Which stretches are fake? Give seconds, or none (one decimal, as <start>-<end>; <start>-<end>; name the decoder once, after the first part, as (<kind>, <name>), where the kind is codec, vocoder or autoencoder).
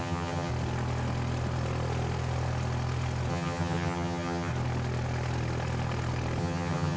0.0-0.5 (vocoder, HiFi-GAN); 3.3-4.5; 6.4-7.0